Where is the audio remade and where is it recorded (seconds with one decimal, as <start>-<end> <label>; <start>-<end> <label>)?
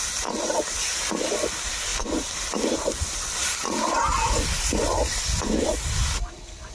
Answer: 0.0-6.7 recorded